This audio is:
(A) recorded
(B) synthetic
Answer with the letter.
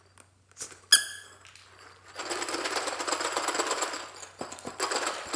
A